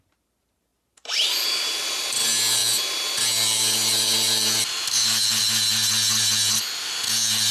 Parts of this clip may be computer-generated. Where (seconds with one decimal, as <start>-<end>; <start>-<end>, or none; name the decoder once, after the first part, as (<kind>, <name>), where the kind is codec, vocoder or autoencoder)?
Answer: none